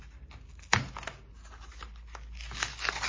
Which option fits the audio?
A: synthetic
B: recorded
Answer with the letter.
B